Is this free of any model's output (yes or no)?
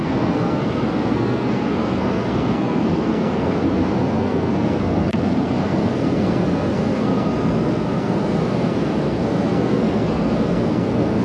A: no